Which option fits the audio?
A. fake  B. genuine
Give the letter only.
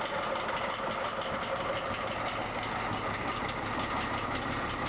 B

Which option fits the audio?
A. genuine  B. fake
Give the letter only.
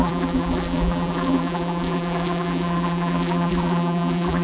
B